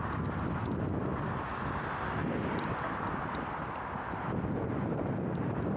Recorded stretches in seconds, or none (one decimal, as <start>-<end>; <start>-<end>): 0.0-5.8